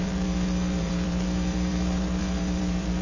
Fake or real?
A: fake